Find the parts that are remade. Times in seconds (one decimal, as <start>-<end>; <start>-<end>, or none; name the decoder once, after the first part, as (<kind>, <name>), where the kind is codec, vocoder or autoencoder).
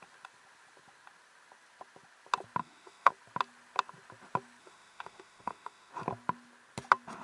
2.6-3.1 (autoencoder, DAC-VAE); 4.6-5.9